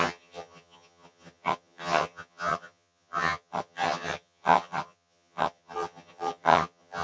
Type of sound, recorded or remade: remade